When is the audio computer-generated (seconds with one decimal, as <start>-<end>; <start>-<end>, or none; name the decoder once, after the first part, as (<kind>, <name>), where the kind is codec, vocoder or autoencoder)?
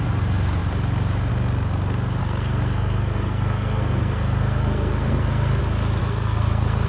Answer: 2.2-5.6 (codec, SNAC); 6.0-6.9